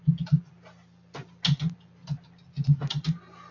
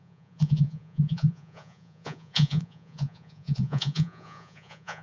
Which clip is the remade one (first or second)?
second